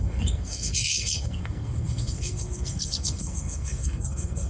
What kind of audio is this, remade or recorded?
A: remade